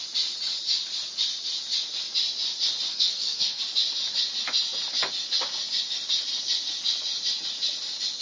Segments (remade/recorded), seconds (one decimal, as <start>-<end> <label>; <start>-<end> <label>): 0.0-2.9 recorded; 2.9-3.6 remade; 3.6-8.2 recorded